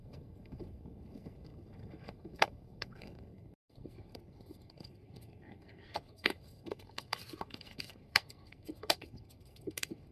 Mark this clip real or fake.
fake